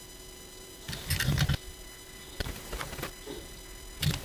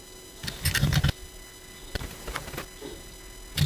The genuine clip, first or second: second